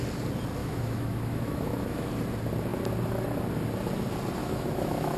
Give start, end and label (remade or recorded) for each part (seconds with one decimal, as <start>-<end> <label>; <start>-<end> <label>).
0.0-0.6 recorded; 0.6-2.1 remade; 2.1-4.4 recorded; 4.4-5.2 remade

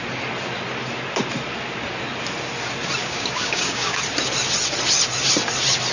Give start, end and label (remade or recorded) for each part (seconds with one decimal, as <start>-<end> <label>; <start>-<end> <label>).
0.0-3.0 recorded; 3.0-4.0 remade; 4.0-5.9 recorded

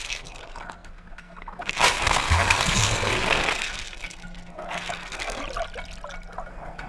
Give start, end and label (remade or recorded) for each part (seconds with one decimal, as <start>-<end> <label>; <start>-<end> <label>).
0.0-5.4 remade; 5.4-6.5 recorded; 6.5-6.9 remade

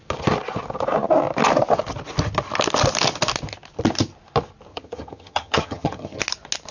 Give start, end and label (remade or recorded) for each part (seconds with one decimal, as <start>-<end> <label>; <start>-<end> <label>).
0.0-4.7 recorded; 4.7-6.2 remade; 6.2-6.7 recorded

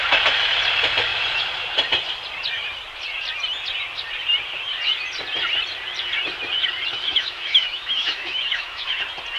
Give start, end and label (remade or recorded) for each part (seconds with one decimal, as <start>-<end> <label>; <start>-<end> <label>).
0.0-7.0 recorded; 7.0-9.0 remade; 9.0-9.4 recorded